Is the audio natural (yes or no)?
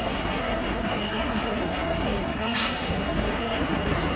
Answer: no